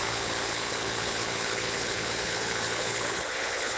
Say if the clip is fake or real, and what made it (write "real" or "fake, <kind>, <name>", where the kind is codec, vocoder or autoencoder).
fake, codec, HILCodec